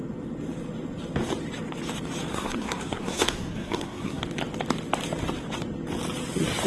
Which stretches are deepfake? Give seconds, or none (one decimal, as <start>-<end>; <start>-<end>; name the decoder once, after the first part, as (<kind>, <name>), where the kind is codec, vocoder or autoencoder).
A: 2.3-4.2 (codec, SNAC)